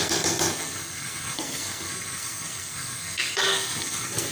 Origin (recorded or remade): remade